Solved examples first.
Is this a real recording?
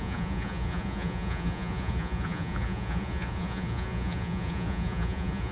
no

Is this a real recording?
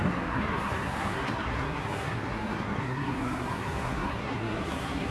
no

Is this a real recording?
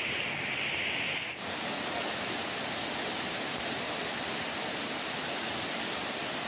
yes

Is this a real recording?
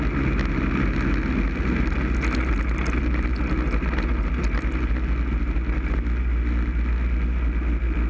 yes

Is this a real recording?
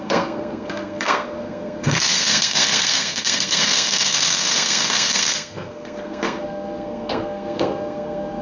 no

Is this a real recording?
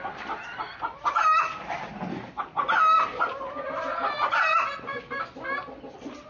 yes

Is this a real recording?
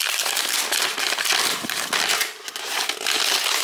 yes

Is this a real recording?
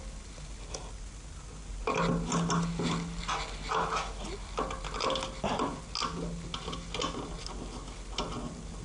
yes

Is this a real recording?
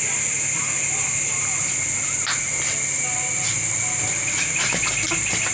yes